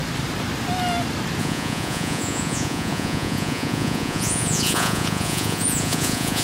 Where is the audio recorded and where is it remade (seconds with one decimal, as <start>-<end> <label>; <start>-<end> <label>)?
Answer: 0.0-1.4 recorded; 1.4-6.4 remade